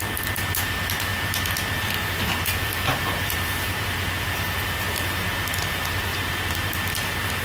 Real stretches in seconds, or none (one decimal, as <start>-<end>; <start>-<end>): 0.0-7.4